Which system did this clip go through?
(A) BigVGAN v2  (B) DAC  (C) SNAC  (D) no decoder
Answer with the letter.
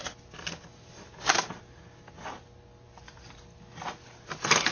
D